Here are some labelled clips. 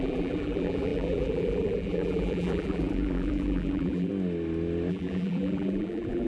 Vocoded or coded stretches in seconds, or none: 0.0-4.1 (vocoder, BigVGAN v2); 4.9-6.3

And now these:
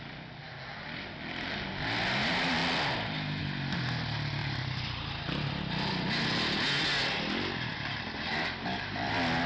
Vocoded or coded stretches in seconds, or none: 4.4-5.9 (vocoder, BigVGAN v2); 7.7-9.1

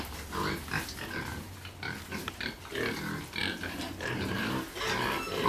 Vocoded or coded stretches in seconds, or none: 1.3-2.1 (vocoder, BigVGAN v2); 3.4-4.4

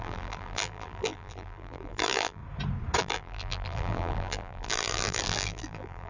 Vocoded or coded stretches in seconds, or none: 0.0-2.4 (vocoder, BigVGAN v2); 3.0-6.1

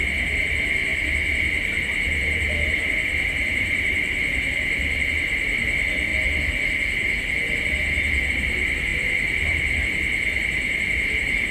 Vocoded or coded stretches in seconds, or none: 0.0-6.1 (vocoder, BigVGAN v2); 8.3-11.5